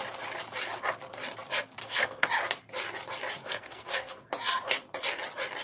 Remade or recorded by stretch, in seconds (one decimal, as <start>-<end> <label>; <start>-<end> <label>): 0.0-1.8 recorded; 1.8-2.3 remade; 2.3-3.4 recorded; 3.4-4.3 remade; 4.3-5.6 recorded